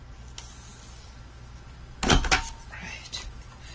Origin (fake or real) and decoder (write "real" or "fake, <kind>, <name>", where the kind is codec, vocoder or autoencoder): real